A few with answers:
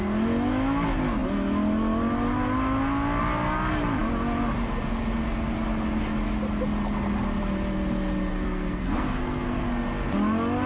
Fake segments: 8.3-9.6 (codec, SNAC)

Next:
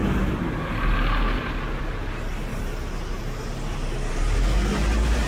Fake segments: none

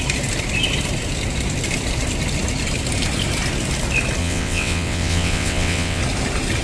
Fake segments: 4.2-6.0 (vocoder, WaveNeXt)

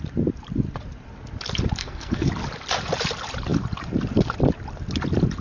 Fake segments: 1.8-2.3 (codec, SNAC)

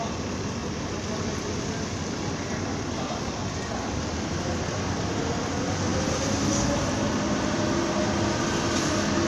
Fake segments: none

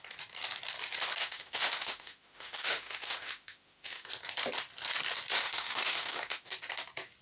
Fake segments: 1.2-4.1 (autoencoder, DAC-VAE); 5.3-6.5